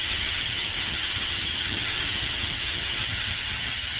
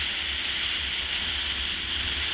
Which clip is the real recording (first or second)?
second